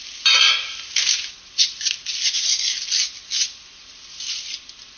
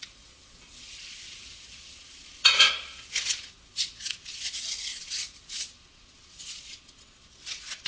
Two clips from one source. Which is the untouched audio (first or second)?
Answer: first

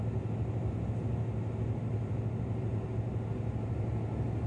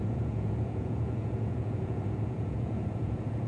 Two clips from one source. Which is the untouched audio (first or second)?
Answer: first